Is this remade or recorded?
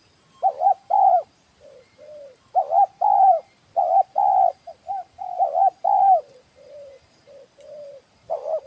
remade